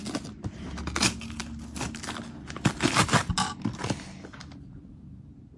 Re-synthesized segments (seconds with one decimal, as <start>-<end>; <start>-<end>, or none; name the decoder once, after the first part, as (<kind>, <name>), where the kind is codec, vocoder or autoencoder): none